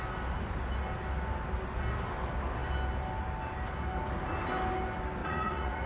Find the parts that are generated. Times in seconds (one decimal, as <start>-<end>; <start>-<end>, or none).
5.2-5.9